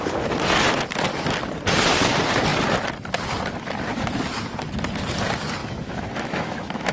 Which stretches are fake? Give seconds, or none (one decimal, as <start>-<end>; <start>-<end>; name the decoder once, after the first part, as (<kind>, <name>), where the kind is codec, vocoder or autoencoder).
5.6-6.9 (autoencoder, DAC-VAE)